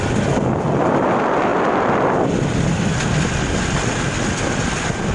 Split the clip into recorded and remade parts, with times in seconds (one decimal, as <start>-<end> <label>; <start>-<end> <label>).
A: 0.0-5.1 recorded

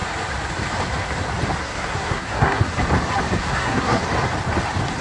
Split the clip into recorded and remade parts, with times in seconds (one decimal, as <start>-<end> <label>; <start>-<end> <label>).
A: 0.0-1.6 recorded; 1.6-2.7 remade; 2.7-3.4 recorded; 3.4-4.0 remade; 4.0-5.0 recorded

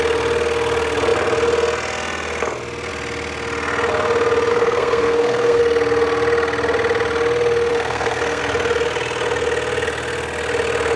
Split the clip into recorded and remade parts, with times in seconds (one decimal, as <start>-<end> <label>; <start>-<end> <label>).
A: 0.0-4.5 recorded; 4.5-5.6 remade; 5.6-7.7 recorded; 7.7-8.4 remade; 8.4-11.0 recorded

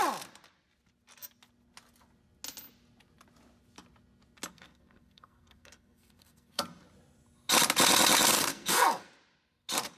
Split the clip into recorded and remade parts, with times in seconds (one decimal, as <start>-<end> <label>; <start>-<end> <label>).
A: 0.0-4.5 recorded; 4.5-6.6 remade; 6.6-8.5 recorded; 8.5-9.1 remade; 9.1-10.0 recorded

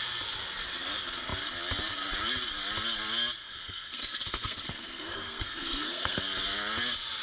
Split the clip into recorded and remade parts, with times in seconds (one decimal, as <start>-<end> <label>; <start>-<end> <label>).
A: 0.0-3.4 recorded; 3.4-6.2 remade; 6.2-7.2 recorded

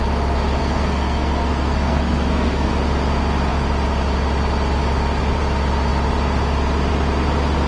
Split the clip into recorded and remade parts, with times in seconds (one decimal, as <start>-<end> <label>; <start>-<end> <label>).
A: 0.0-0.6 recorded; 0.6-2.7 remade; 2.7-7.7 recorded